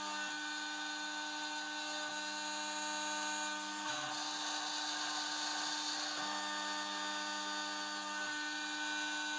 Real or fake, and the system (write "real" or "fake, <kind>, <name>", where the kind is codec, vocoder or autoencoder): real